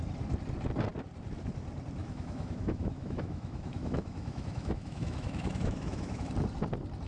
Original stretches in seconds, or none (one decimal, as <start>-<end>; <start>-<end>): 0.0-2.0; 6.3-7.1